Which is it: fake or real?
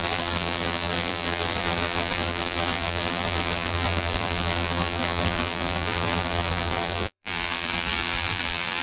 fake